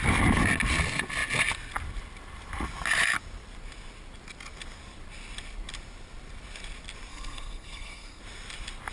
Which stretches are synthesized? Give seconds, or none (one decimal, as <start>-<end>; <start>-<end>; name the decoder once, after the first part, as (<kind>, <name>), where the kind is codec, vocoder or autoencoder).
7.1-8.2 (codec, SNAC)